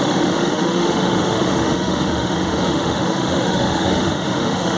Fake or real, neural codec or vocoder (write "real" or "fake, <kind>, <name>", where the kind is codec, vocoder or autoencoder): fake, autoencoder, DAC-VAE